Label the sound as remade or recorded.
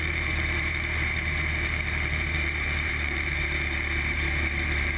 remade